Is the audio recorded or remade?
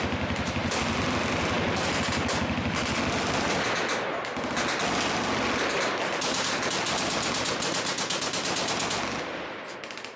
recorded